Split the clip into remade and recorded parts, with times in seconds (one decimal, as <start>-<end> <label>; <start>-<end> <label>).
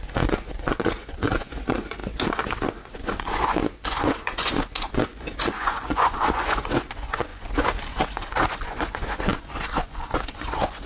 0.0-10.9 remade